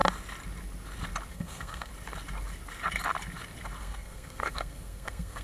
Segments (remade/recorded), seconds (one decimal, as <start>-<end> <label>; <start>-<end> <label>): 0.0-1.3 recorded; 1.3-1.9 remade; 1.9-3.8 recorded; 3.8-5.4 remade